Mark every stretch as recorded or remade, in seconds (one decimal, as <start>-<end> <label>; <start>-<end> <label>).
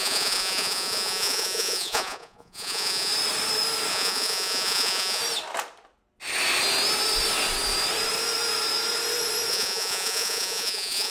0.0-3.1 remade; 3.1-3.9 recorded; 3.9-5.2 remade; 5.2-9.5 recorded; 9.5-11.1 remade